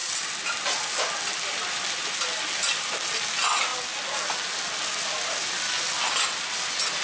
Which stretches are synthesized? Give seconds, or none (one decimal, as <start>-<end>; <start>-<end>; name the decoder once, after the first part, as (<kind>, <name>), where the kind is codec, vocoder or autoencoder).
none